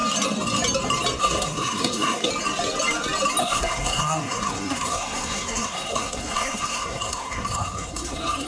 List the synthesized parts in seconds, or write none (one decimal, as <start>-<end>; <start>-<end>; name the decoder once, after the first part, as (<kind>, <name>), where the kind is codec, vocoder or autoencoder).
1.2-2.3 (codec, SNAC); 3.4-8.5